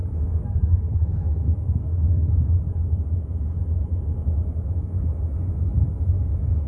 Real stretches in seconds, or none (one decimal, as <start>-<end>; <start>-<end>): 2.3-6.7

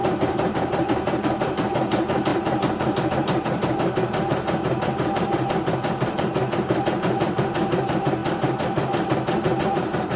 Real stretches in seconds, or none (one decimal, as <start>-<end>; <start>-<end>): 8.2-9.6

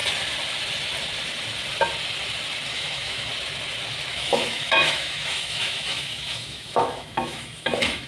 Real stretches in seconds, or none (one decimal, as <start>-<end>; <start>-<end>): 0.0-2.7; 3.3-4.1

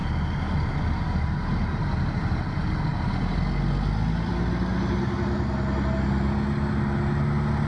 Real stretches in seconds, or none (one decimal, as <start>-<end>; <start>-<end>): 0.0-7.7